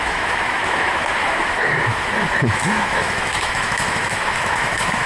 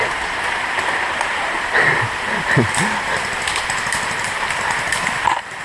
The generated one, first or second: first